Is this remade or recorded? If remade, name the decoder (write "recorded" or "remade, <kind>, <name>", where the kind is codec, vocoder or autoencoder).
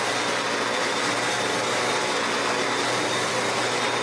recorded